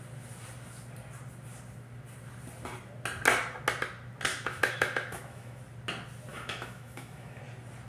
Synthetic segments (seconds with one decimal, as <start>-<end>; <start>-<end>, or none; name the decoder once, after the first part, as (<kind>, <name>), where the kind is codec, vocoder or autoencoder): 4.3-5.6 (autoencoder, DAC-VAE); 6.3-7.4